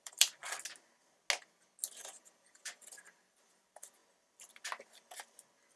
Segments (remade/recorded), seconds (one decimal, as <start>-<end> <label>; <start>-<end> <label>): 0.0-0.4 remade; 0.4-2.0 recorded; 2.0-4.0 remade; 4.0-5.8 recorded